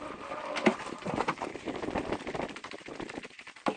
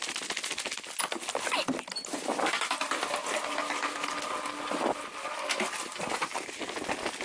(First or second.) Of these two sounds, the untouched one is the second